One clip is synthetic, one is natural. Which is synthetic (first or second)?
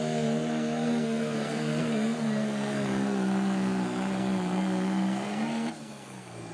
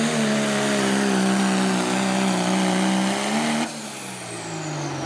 first